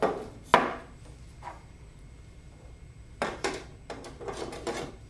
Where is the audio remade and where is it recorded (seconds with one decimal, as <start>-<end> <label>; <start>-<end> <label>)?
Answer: 0.0-0.5 remade; 0.5-1.5 recorded; 1.5-5.1 remade